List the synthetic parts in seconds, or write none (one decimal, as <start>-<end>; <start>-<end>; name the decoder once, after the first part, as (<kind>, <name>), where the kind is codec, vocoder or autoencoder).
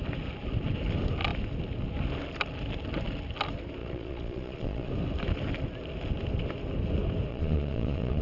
3.8-4.9 (vocoder, Vocos); 7.3-8.2